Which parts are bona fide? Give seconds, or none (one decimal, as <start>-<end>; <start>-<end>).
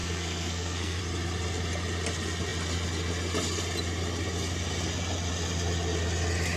1.0-6.6